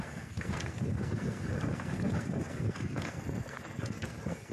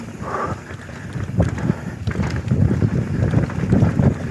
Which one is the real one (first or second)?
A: second